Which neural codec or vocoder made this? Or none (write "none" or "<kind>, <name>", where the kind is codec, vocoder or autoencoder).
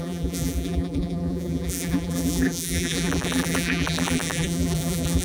vocoder, BigVGAN v2